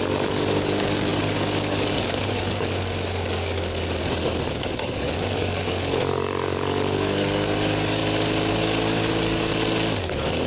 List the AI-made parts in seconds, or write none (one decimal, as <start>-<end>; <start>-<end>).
0.0-8.0; 8.5-9.5; 10.0-10.5